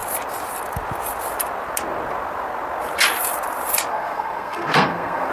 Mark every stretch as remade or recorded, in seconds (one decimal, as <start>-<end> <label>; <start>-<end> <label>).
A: 0.0-3.9 recorded; 3.9-5.3 remade